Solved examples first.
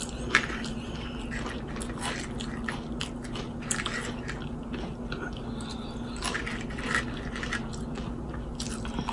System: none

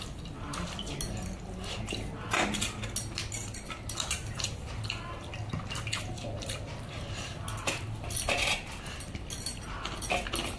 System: none